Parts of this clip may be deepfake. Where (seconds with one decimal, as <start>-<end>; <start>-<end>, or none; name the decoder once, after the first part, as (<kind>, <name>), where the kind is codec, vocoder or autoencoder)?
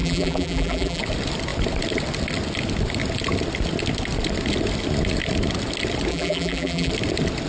0.0-1.0 (vocoder, BigVGAN v2); 6.1-6.9